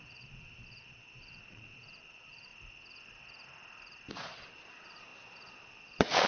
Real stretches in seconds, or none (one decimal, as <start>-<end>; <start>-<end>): 2.5-4.1